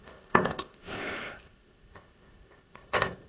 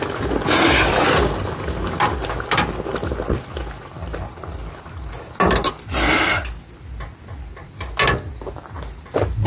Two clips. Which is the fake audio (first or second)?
first